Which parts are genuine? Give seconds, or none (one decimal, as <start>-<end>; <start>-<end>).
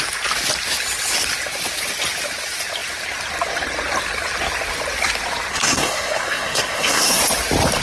0.0-5.5; 7.2-7.8